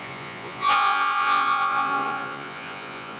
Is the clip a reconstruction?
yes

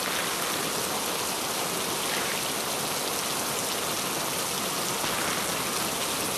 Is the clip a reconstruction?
no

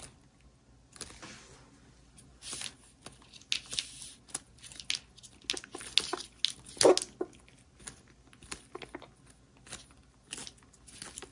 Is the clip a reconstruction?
no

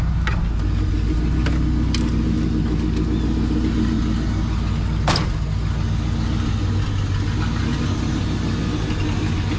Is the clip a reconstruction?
no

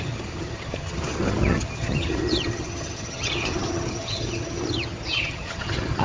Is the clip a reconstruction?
yes